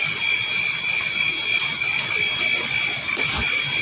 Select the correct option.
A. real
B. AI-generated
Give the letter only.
A